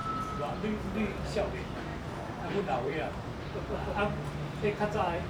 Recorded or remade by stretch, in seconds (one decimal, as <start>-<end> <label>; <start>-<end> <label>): 0.0-1.2 recorded; 1.2-3.3 remade; 3.3-4.6 recorded; 4.6-5.3 remade